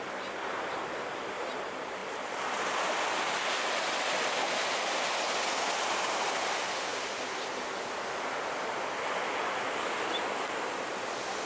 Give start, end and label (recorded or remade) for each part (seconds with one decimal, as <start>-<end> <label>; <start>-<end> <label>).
0.0-11.5 recorded